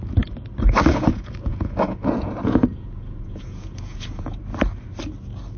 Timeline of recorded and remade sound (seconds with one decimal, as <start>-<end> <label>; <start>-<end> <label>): 0.0-0.9 recorded; 0.9-4.3 remade; 4.3-5.6 recorded

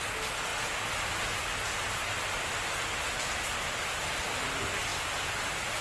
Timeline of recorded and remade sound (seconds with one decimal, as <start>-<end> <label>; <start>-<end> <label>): 0.0-5.8 recorded

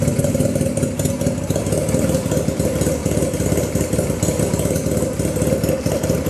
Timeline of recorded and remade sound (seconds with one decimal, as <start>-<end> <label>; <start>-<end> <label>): 0.0-3.0 recorded; 3.0-4.4 remade; 4.4-6.3 recorded

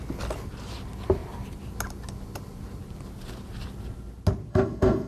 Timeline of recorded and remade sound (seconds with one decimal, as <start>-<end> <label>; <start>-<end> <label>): 0.0-4.5 recorded; 4.5-5.1 remade

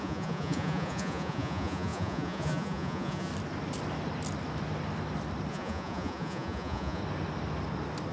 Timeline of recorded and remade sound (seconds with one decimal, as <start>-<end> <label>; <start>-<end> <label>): 0.0-3.3 remade; 3.3-5.5 recorded; 5.5-7.0 remade; 7.0-8.1 recorded

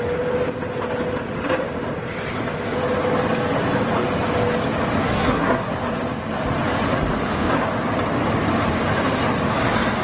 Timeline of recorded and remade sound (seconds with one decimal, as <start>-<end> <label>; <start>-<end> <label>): 0.0-5.0 recorded; 5.0-5.7 remade; 5.7-10.0 recorded

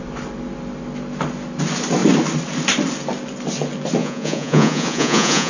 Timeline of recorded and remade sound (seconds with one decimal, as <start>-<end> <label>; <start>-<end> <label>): 0.0-4.0 recorded; 4.0-5.5 remade